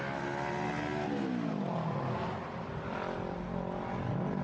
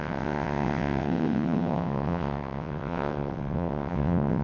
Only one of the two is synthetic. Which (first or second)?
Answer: second